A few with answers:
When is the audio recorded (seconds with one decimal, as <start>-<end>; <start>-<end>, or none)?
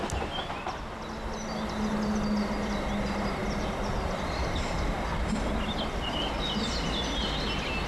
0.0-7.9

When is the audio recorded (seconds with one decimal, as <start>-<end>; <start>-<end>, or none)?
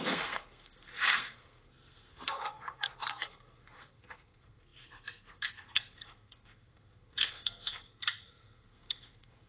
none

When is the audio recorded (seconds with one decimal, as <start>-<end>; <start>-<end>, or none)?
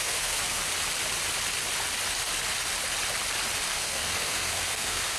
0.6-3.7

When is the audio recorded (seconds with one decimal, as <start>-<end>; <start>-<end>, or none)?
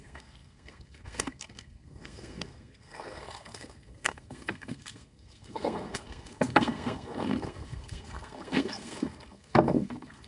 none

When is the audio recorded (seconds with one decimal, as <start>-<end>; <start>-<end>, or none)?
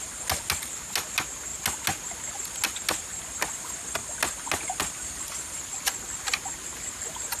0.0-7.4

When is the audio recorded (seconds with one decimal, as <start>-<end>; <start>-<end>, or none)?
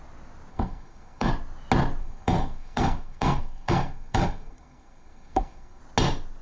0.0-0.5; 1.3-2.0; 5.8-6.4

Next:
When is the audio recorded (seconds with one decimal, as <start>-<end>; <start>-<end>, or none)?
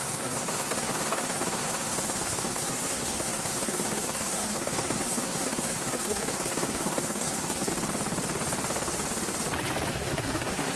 7.7-9.9